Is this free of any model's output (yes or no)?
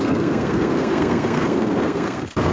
no